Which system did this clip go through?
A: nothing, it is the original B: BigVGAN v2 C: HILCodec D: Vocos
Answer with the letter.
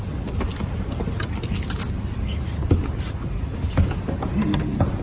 A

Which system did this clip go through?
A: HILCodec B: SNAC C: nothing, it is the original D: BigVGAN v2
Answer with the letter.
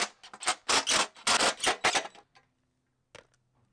C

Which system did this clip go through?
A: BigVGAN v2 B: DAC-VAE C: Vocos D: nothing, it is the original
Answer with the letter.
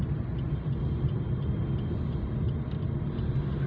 D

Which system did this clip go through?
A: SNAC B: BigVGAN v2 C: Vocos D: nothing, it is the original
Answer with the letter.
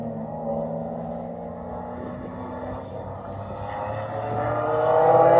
D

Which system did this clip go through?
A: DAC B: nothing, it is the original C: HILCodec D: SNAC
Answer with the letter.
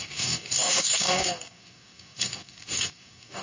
A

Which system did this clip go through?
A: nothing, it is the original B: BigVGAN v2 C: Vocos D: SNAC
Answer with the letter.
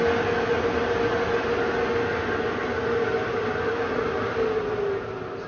A